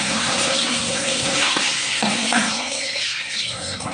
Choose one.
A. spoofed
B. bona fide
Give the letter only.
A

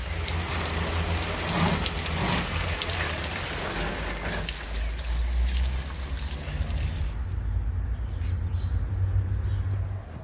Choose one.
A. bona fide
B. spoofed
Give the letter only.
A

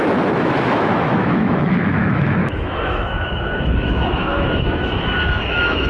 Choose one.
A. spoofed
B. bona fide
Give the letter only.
A